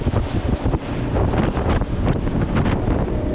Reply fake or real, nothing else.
real